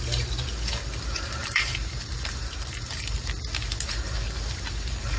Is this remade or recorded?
remade